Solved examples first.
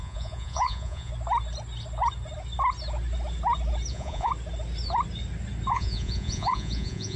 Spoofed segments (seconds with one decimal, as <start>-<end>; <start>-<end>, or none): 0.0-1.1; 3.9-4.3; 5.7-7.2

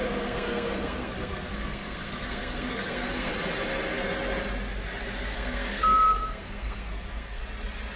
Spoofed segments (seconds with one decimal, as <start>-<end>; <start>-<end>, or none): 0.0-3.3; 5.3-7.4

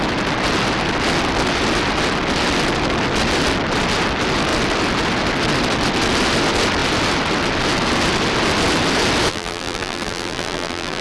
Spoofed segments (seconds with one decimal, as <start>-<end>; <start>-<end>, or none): 9.3-11.0

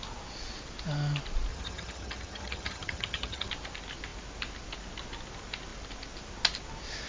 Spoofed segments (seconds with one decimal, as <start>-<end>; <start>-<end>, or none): 1.5-3.5